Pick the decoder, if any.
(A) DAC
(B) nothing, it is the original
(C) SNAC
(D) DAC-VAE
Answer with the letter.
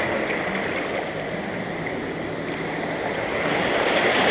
B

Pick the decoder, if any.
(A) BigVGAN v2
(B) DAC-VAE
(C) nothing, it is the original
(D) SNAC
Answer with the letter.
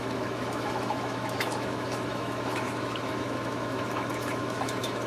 B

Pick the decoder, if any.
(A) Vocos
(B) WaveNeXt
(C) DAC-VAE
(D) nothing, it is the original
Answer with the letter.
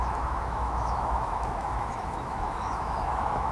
C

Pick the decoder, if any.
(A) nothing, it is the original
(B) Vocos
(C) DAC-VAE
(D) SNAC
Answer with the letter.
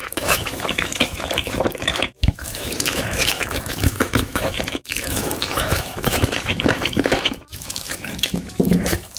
C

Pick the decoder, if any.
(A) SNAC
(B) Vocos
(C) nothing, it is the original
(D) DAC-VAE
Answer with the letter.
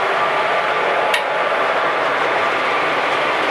C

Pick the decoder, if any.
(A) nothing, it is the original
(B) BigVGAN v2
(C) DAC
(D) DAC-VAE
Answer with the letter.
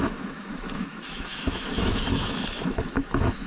D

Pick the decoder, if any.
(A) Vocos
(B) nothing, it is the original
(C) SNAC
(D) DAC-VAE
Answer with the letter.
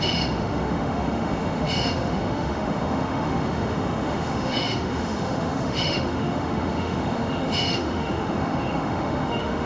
D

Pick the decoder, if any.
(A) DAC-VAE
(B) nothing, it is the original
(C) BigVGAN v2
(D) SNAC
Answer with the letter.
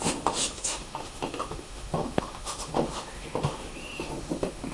A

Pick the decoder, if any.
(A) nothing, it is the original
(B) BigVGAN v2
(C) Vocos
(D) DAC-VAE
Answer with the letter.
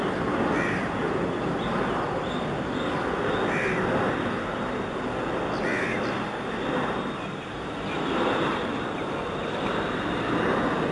A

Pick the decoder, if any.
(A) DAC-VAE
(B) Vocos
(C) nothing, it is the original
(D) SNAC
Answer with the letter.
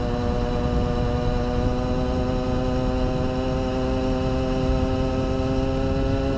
C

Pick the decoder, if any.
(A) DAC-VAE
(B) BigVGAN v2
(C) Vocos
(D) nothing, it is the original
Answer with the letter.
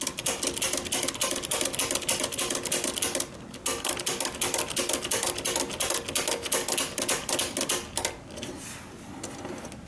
D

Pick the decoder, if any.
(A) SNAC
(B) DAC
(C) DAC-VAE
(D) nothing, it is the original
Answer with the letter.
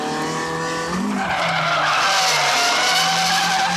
D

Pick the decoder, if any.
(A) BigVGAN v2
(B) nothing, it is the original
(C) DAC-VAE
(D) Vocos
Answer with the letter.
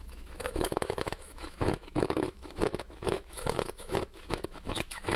C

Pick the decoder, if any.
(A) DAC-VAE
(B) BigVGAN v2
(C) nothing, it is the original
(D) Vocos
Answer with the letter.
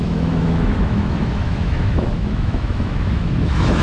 A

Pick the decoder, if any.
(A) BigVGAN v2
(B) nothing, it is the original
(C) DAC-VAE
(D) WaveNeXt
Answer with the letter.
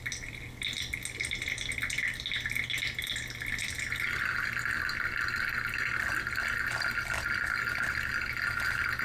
B